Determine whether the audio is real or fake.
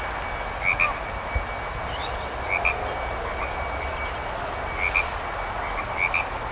real